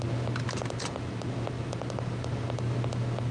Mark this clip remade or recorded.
recorded